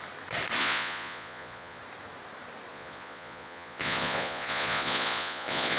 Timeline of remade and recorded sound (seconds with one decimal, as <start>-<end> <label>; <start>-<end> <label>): 0.0-0.6 recorded; 0.6-1.8 remade; 1.8-2.7 recorded; 2.7-5.8 remade